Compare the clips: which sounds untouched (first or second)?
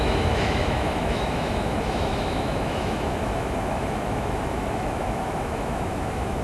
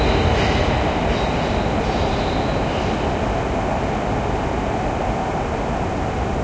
second